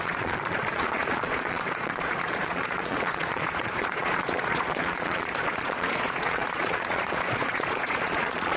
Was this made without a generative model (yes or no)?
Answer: no